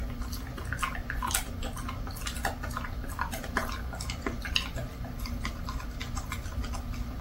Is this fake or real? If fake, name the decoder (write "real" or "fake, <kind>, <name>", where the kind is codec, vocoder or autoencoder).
real